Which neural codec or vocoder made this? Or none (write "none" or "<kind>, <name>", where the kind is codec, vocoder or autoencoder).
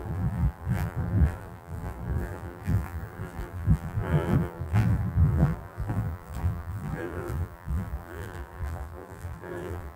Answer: vocoder, BigVGAN v2